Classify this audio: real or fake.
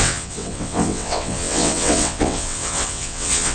fake